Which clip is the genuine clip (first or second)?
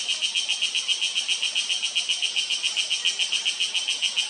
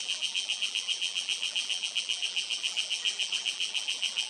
first